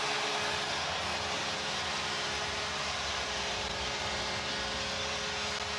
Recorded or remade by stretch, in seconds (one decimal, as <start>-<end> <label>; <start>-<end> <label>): 0.0-1.4 recorded; 1.4-4.0 remade; 4.0-5.8 recorded